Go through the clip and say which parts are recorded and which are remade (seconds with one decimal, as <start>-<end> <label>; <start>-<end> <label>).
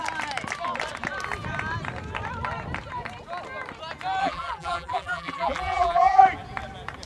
0.0-4.2 recorded; 4.2-6.2 remade; 6.2-7.1 recorded